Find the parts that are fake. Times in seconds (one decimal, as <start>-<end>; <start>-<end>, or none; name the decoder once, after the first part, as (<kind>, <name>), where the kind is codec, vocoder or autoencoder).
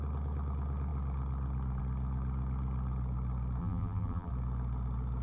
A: 3.6-4.3 (vocoder, BigVGAN v2)